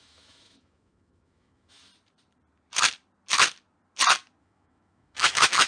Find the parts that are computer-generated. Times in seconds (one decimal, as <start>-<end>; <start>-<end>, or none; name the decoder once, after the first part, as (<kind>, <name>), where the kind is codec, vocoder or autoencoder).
0.0-1.9 (autoencoder, DAC-VAE); 4.4-5.7

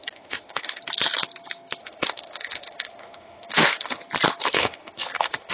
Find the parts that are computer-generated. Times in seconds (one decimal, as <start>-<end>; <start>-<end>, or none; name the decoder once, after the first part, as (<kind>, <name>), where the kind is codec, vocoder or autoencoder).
0.0-0.8 (autoencoder, DAC-VAE); 1.8-4.0; 4.4-5.5

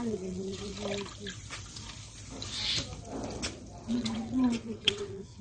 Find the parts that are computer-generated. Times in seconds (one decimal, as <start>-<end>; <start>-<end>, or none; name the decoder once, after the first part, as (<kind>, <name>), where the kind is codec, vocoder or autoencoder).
0.0-0.7 (vocoder, WaveNeXt); 3.9-5.4

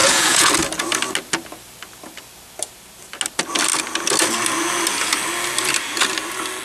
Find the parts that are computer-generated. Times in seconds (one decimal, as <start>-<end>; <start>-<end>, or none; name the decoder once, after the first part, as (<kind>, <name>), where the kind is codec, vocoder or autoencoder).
0.0-0.5 (vocoder, Vocos)

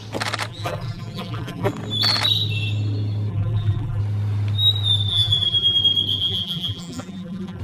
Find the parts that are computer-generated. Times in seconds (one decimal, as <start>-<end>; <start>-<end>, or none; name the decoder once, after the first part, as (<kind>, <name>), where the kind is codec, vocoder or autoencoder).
0.5-1.7 (vocoder, BigVGAN v2); 3.3-4.0; 5.1-5.8; 6.2-7.6